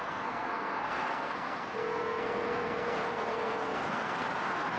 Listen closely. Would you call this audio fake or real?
fake